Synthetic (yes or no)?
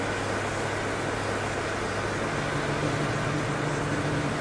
no